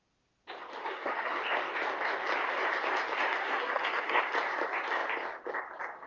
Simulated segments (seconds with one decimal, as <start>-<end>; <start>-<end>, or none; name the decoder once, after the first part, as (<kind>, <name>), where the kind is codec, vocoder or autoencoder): 0.8-1.4 (codec, SNAC); 3.4-4.2